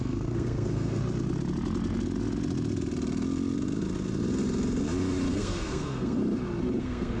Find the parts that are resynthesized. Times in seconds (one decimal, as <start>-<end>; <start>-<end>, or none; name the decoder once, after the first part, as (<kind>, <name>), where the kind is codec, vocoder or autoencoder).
0.0-1.0 (codec, SNAC); 5.3-6.2; 6.8-7.2